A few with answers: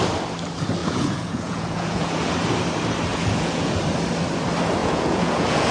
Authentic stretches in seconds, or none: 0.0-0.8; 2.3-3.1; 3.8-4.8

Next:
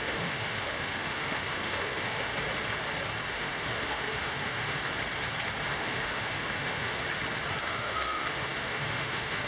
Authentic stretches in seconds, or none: 2.3-3.3; 4.8-5.7; 7.0-7.6

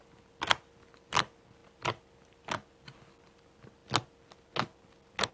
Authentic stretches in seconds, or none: 0.0-5.3